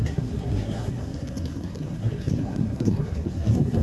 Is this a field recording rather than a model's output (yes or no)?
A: no